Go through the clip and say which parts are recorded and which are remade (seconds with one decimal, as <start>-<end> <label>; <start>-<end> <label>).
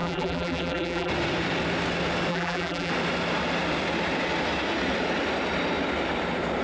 0.0-1.1 remade; 1.1-2.3 recorded; 2.3-2.9 remade; 2.9-6.6 recorded